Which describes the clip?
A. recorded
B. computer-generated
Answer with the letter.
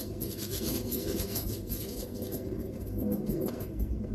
B